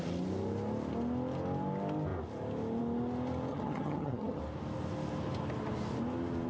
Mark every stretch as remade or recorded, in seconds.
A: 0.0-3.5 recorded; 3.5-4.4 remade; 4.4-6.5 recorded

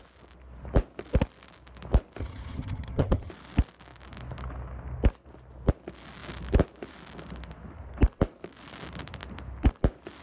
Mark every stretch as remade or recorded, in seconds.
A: 0.0-2.2 recorded; 2.2-3.3 remade; 3.3-10.2 recorded

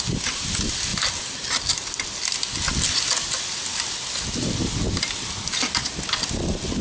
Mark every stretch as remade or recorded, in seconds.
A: 0.0-6.8 recorded

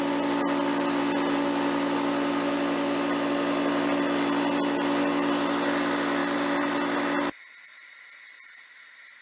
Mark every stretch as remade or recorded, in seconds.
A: 0.0-9.2 recorded

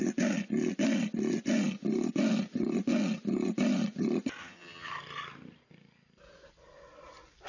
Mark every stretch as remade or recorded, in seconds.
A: 0.0-4.4 recorded; 4.4-4.9 remade; 4.9-7.5 recorded

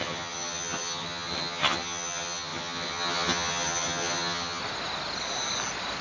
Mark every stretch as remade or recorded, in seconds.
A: 0.0-4.6 remade; 4.6-6.0 recorded